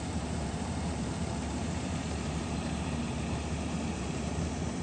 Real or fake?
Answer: fake